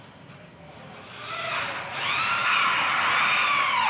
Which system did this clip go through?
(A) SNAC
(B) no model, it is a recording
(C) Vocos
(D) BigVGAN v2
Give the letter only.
B